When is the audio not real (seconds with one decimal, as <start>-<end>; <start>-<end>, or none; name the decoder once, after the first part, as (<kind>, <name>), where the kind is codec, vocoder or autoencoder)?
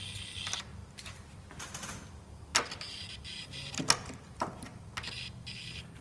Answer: none